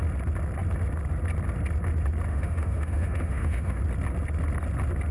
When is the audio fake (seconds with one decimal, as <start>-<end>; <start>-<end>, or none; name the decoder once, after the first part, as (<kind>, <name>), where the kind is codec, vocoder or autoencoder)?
2.3-3.8 (autoencoder, DAC-VAE)

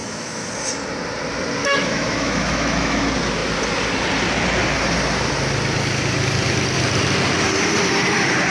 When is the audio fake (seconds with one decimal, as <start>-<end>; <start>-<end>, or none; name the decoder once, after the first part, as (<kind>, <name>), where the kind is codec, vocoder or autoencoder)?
0.0-0.5 (autoencoder, DAC-VAE); 1.6-3.0

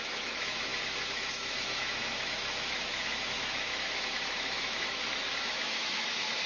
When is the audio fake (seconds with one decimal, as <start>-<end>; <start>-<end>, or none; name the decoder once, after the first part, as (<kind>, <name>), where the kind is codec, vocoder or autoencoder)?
0.0-6.5 (autoencoder, DAC-VAE)

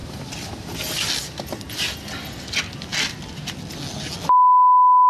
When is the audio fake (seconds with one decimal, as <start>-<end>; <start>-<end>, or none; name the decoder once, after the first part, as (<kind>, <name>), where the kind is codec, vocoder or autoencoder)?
none

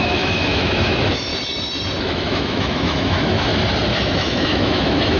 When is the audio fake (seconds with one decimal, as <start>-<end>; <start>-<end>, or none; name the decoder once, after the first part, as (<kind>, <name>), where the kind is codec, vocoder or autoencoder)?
0.0-1.3 (autoencoder, DAC-VAE); 2.0-3.5; 4.0-5.2

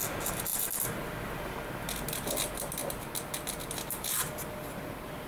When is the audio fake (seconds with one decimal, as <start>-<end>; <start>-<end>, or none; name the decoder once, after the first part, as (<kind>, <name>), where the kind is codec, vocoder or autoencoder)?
none

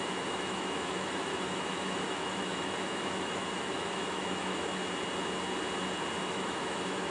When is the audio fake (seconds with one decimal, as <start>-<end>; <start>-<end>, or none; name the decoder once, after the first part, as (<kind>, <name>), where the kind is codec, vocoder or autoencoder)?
0.0-4.8 (autoencoder, DAC-VAE); 6.3-7.1

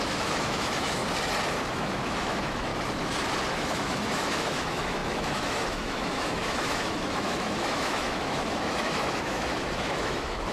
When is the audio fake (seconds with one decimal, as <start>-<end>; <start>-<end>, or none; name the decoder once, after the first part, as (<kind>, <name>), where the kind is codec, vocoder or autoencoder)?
0.0-1.0 (autoencoder, DAC-VAE); 1.7-2.7; 3.5-10.5